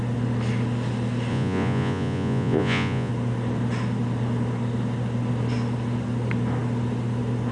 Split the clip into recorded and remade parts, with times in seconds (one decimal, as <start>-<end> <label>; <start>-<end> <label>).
0.0-1.3 recorded; 1.3-3.1 remade; 3.1-7.5 recorded